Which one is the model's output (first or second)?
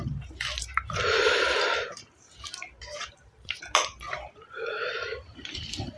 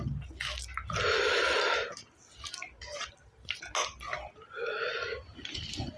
first